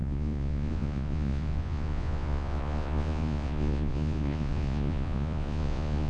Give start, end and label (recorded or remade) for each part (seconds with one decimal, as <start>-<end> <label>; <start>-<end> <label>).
0.0-6.1 remade